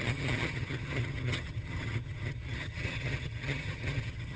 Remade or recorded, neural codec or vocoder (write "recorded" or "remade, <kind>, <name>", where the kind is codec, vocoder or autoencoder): remade, vocoder, HiFi-GAN